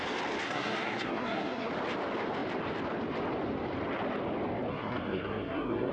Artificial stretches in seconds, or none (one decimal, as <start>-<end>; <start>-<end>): 0.4-1.7; 4.7-5.9